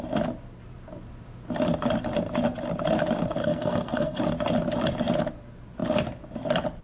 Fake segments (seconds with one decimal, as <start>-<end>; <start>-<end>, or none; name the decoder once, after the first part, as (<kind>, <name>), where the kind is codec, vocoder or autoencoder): 3.4-4.2 (codec, SNAC)